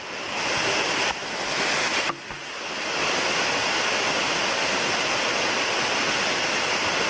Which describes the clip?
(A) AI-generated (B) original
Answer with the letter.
B